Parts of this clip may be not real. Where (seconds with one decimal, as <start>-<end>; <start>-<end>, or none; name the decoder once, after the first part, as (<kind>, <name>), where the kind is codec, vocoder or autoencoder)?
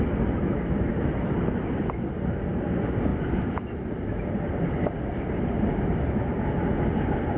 none